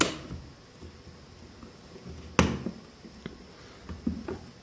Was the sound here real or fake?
real